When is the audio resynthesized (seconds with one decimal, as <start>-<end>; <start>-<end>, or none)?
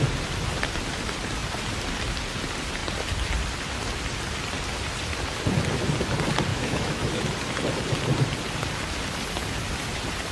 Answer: 6.5-7.2